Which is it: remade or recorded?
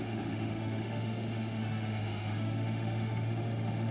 remade